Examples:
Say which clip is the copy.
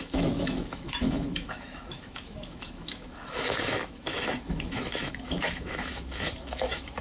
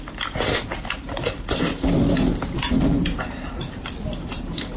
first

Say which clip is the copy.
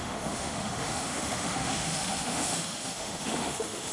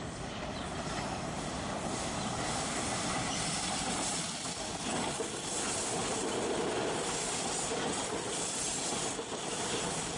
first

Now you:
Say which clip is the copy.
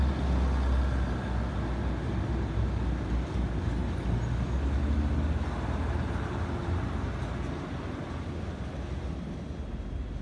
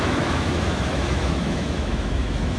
second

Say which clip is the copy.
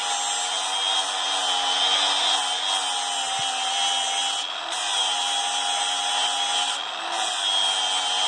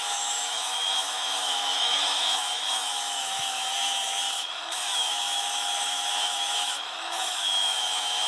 second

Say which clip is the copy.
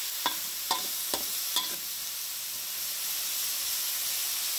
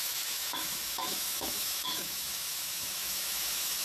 second